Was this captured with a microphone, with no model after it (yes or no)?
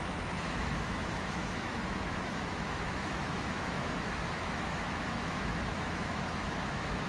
no